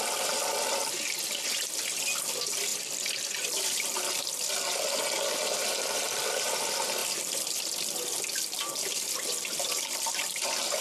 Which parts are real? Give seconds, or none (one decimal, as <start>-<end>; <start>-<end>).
0.0-7.0; 10.4-10.8